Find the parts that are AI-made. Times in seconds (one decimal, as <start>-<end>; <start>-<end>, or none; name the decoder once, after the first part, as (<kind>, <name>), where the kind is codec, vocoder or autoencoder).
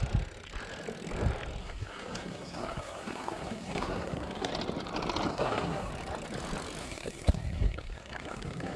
1.6-4.5 (codec, SNAC); 5.3-5.9; 6.8-8.8